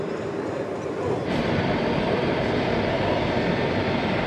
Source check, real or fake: real